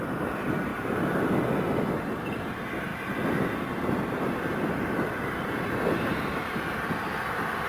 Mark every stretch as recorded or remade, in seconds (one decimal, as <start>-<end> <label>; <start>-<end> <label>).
0.0-0.7 recorded; 0.7-1.8 remade; 1.8-7.7 recorded